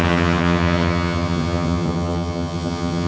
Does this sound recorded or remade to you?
remade